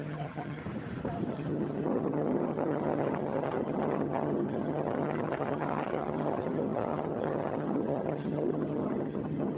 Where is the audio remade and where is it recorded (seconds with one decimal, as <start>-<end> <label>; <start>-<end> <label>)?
0.0-0.6 remade; 0.6-1.3 recorded; 1.3-9.6 remade